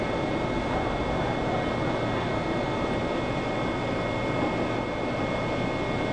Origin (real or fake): real